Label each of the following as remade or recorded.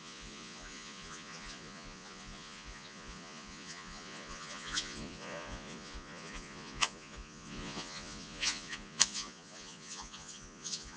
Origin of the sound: remade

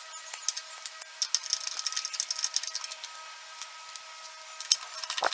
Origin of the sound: recorded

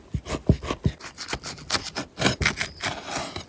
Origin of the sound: recorded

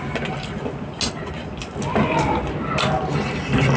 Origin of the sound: recorded